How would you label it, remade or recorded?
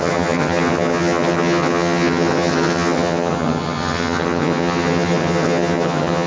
remade